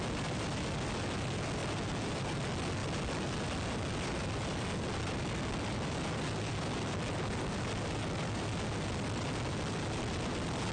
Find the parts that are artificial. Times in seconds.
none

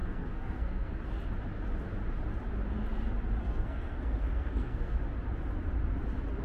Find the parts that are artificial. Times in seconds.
0.0-0.9 (codec, SNAC); 3.4-5.0

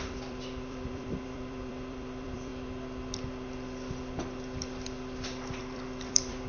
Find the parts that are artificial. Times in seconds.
0.0-2.5 (vocoder, BigVGAN v2); 5.6-6.5

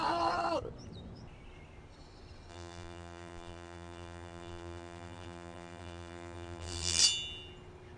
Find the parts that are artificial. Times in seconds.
2.5-7.0 (vocoder, BigVGAN v2)